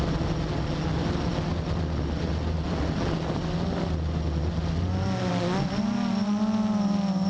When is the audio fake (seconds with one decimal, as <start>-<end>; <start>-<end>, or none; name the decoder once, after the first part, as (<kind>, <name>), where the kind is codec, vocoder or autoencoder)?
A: none

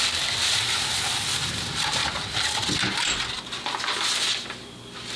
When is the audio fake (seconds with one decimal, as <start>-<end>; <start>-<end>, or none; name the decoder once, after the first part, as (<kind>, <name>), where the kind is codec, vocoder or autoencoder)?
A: none